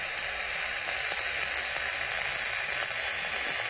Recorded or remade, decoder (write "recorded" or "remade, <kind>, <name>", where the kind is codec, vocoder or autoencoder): recorded